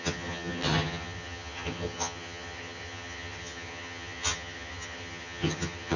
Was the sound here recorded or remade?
remade